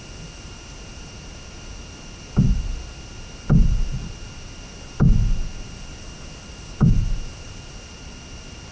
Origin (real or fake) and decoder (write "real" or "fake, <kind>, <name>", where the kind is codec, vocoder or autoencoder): real